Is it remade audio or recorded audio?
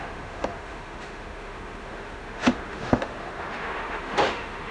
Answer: remade